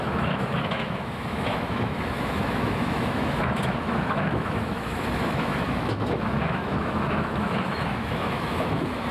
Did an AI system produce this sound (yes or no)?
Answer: yes